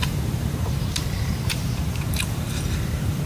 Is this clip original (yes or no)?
no